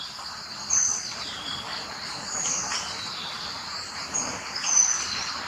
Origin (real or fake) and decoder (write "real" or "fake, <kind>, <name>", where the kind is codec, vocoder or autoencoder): real